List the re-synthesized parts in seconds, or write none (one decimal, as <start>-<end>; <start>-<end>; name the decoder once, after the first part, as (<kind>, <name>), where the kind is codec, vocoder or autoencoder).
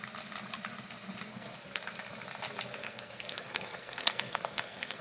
1.3-1.8 (codec, SNAC); 2.8-5.0